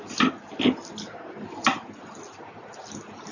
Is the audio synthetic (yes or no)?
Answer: no